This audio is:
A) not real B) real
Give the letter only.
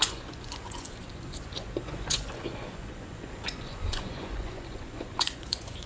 A